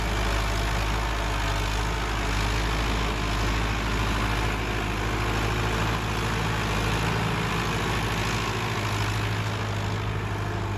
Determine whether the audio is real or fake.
real